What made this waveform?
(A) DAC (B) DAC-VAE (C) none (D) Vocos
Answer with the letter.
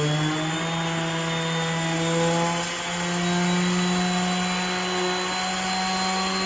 C